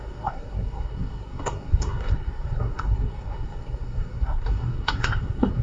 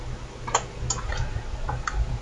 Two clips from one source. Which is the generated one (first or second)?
first